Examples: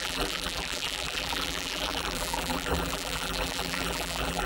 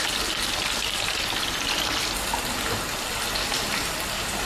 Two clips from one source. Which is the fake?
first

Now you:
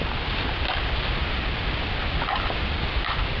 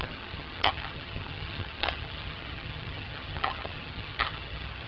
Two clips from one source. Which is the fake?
second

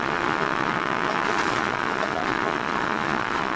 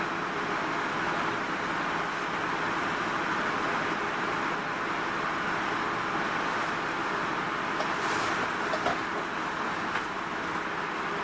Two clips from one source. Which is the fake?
first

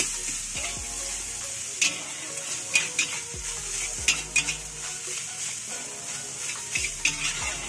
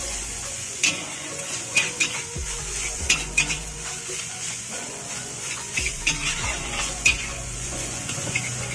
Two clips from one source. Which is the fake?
second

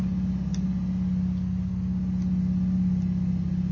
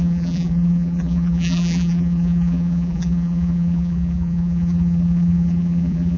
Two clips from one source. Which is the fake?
second